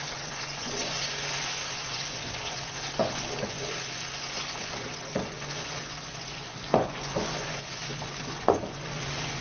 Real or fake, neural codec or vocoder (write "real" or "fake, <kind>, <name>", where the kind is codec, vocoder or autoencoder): fake, vocoder, Vocos